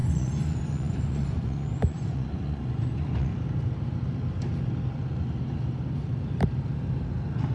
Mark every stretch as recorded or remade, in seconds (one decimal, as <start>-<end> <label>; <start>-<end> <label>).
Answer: 0.0-3.3 remade; 3.3-7.5 recorded

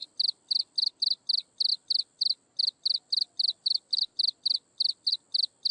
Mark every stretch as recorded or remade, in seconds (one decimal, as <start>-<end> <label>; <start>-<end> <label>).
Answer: 0.0-5.7 recorded